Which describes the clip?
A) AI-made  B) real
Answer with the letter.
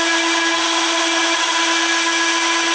B